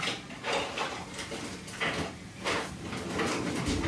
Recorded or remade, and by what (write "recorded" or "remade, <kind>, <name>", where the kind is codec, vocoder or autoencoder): recorded